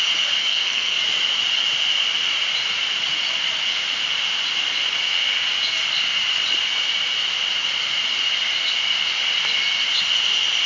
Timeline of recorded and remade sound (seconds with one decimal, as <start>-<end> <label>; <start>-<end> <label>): 0.0-0.4 recorded; 0.4-1.0 remade; 1.0-10.7 recorded